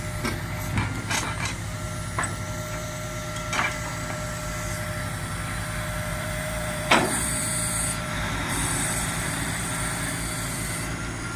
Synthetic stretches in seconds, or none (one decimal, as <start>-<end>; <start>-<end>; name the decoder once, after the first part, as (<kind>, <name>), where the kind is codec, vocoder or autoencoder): 6.1-9.7 (vocoder, BigVGAN v2)